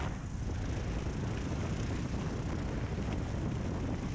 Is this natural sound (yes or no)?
yes